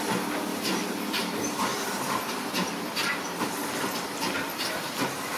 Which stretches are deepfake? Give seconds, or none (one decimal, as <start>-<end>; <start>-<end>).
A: 0.5-1.2; 1.7-3.5